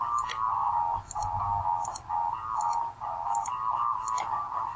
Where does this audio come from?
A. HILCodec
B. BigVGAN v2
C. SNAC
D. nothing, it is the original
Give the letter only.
D